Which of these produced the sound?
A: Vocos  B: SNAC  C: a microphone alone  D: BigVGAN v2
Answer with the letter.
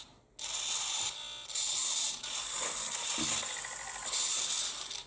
C